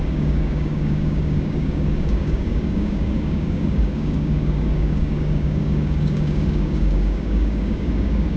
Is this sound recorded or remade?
remade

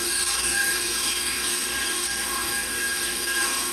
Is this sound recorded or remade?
remade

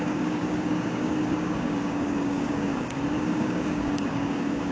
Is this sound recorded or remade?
remade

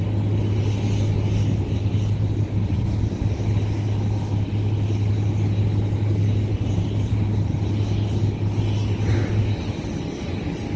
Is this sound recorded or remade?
recorded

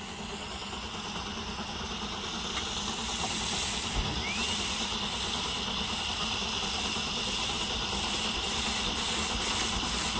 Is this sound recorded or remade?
recorded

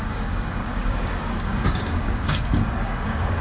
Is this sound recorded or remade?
remade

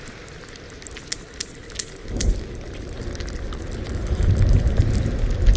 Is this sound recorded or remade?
recorded